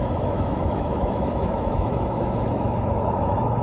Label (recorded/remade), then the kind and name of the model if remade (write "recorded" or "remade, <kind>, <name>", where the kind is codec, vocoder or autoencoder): remade, autoencoder, DAC-VAE